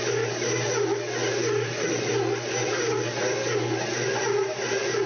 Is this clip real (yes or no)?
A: yes